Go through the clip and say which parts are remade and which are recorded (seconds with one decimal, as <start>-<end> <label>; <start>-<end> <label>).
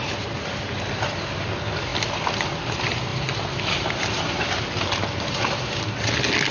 0.0-6.5 recorded